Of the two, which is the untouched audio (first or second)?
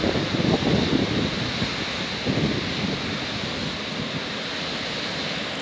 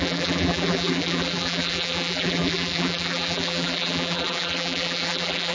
first